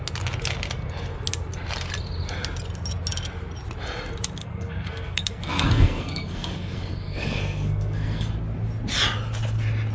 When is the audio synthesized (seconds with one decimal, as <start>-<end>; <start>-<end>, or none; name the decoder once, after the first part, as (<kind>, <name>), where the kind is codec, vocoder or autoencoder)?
4.4-8.3 (codec, SNAC)